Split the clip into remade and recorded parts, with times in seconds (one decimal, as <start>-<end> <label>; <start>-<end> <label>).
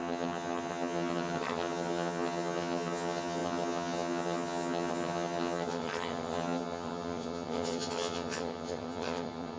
0.0-9.6 remade